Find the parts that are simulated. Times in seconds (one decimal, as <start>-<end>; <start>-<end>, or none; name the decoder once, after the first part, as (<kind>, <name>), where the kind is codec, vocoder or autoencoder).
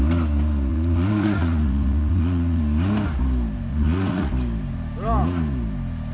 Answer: 0.7-2.6 (vocoder, Vocos); 3.7-4.3